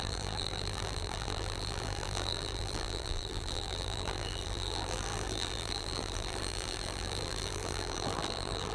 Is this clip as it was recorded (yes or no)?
no